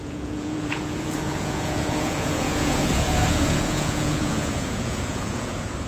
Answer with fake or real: fake